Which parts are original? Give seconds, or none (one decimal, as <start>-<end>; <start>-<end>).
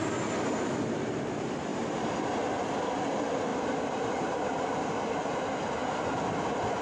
0.0-1.7; 2.4-3.5; 4.5-6.8